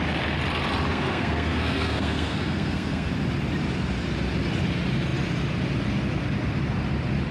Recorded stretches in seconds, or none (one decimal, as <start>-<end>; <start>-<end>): 0.0-0.9; 3.1-7.3